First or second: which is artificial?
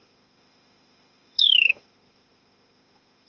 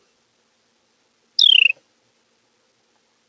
first